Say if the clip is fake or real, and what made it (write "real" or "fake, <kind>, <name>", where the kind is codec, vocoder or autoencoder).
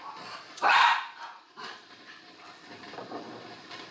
fake, vocoder, BigVGAN v2